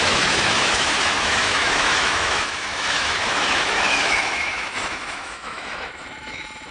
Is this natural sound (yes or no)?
no